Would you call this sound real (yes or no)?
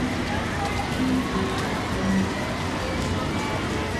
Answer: yes